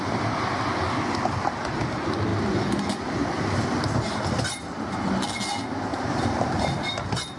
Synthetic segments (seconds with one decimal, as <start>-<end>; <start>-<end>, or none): 2.3-3.9; 5.9-6.5